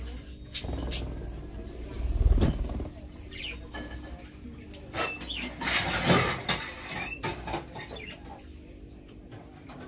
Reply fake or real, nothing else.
real